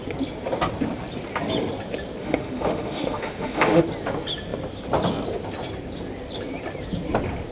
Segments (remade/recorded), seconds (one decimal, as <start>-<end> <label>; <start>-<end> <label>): 0.0-2.2 recorded; 2.2-3.8 remade; 3.8-7.5 recorded